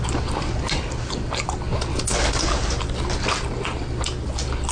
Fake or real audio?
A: real